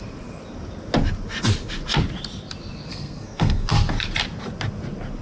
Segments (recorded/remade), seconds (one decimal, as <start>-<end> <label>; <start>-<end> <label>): 0.0-2.9 recorded; 2.9-3.7 remade; 3.7-5.2 recorded